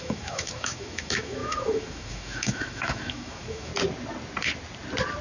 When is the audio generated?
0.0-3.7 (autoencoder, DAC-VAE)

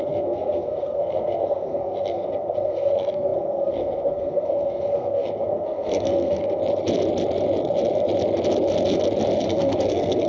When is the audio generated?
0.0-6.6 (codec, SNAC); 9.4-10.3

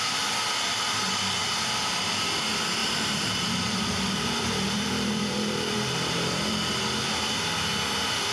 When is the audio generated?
2.8-6.7 (vocoder, BigVGAN v2)

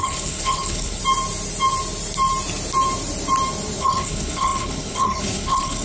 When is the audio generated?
0.0-1.0 (codec, HILCodec); 3.8-5.8

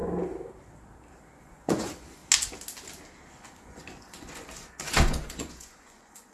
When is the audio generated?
1.4-2.2 (vocoder, Vocos); 3.3-6.3

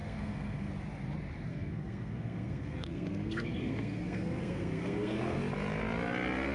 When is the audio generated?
0.0-0.7 (codec, SNAC); 1.5-5.4